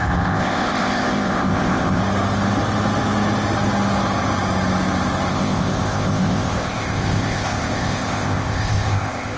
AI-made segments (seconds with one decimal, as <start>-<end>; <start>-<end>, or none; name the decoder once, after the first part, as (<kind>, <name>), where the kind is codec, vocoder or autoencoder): 0.0-2.0 (codec, ZipCodec); 5.3-9.4